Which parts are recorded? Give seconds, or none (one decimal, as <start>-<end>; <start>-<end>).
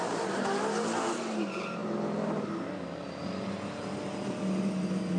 0.0-5.2